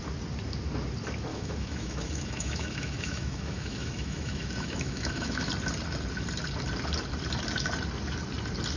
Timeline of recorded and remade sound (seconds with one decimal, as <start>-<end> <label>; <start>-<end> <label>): 0.0-1.3 recorded; 1.3-5.5 remade; 5.5-8.8 recorded